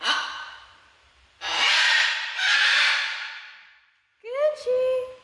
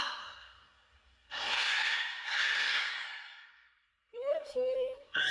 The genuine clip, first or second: first